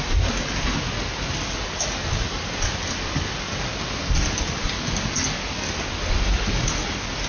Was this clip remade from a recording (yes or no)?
no